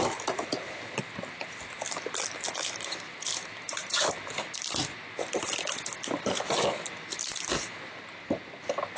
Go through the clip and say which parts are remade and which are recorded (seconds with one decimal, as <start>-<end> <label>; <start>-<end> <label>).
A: 0.0-9.0 recorded